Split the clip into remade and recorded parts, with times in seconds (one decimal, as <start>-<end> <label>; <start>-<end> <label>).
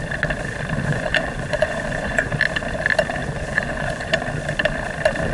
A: 0.0-0.9 recorded; 0.9-2.3 remade; 2.3-3.2 recorded; 3.2-4.1 remade; 4.1-5.3 recorded